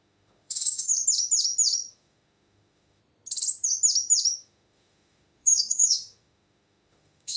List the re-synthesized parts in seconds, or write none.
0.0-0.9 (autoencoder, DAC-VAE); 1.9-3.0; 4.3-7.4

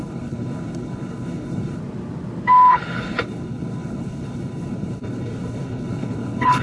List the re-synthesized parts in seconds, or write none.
0.0-1.8 (codec, HILCodec); 2.7-6.6

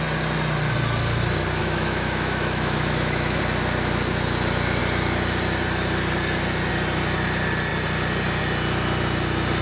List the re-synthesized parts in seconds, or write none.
1.6-3.4 (autoencoder, DAC-VAE)

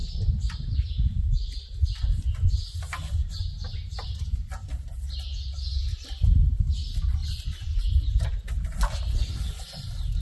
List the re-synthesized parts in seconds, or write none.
3.2-4.3 (vocoder, BigVGAN v2); 5.7-6.6; 7.2-8.5

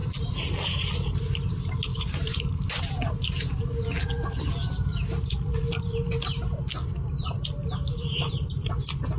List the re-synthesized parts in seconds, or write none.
1.9-3.6 (vocoder, BigVGAN v2); 7.9-8.7

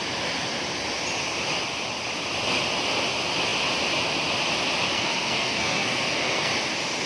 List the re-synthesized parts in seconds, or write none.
4.9-6.5 (codec, SNAC)

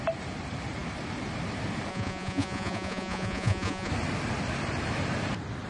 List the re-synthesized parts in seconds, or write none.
1.9-3.9 (vocoder, Vocos)